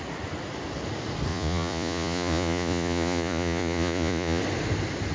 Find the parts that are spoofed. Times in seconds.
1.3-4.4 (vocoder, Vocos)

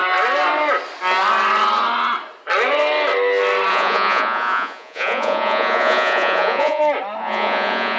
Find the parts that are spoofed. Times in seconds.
3.7-6.8 (vocoder, Vocos); 7.2-8.0

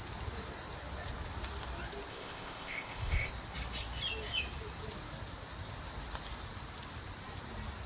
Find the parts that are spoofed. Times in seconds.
2.1-3.3 (codec, ZipCodec)